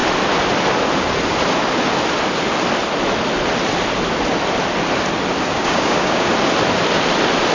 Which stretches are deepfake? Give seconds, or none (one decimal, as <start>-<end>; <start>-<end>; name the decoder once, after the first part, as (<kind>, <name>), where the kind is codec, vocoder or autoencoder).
5.5-6.3 (codec, DAC)